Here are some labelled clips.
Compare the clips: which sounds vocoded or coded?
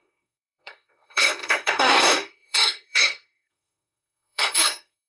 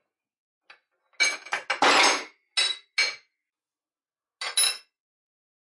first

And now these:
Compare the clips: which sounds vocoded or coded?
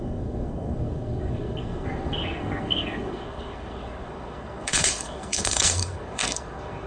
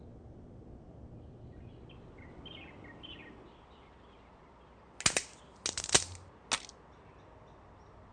first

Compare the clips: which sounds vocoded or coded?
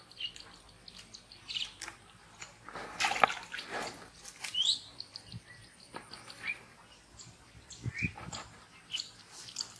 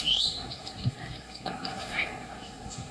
second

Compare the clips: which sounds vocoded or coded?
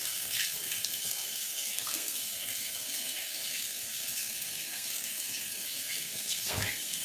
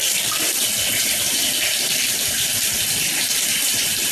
first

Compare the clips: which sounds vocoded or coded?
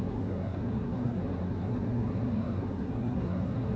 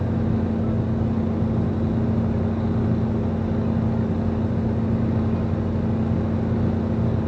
first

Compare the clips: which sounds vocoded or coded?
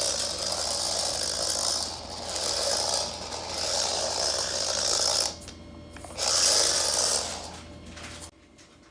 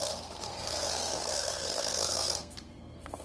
second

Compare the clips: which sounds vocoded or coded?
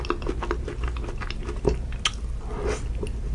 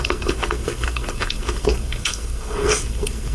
second